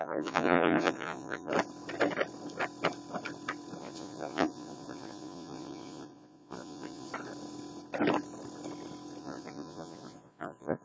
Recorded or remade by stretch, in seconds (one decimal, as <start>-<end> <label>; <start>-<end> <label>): 0.0-1.5 remade; 1.5-3.8 recorded; 3.8-7.1 remade; 7.1-9.2 recorded; 9.2-10.8 remade

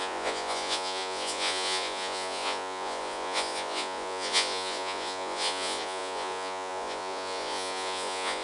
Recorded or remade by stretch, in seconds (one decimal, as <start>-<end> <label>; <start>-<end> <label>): 0.0-8.4 remade

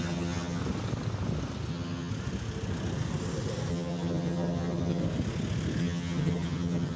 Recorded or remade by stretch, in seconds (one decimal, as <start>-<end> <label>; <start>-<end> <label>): 0.0-0.6 remade; 0.6-1.7 recorded; 1.7-2.1 remade; 2.1-3.7 recorded; 3.7-5.0 remade; 5.0-5.8 recorded; 5.8-7.0 remade

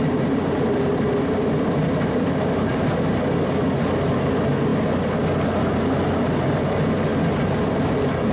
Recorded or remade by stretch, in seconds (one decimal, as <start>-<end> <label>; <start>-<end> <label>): 0.0-8.3 recorded

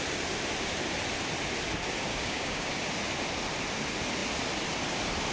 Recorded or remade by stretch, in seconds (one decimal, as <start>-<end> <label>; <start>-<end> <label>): 0.0-2.1 recorded; 2.1-2.7 remade; 2.7-5.3 recorded

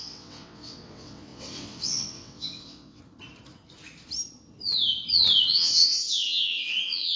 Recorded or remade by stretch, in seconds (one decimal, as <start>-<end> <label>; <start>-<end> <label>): 0.0-3.0 remade; 3.0-5.5 recorded; 5.5-7.2 remade

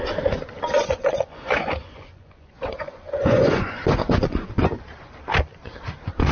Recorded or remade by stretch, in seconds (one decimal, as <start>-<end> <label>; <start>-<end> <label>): 0.0-0.8 recorded; 0.8-4.6 remade; 4.6-6.3 recorded